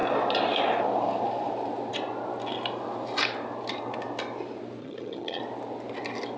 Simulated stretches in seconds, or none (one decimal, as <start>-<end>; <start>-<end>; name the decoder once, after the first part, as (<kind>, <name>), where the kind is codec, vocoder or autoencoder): 4.8-5.4 (vocoder, HiFi-GAN)